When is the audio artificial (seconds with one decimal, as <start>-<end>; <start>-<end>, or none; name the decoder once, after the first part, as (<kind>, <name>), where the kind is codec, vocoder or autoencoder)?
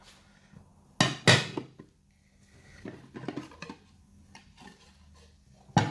none